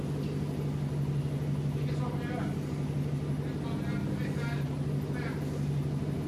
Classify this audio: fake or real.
real